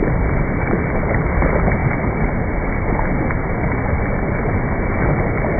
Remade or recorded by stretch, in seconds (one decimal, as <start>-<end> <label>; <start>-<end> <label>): 0.0-5.6 recorded